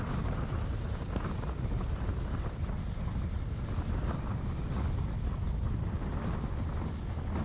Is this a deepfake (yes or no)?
no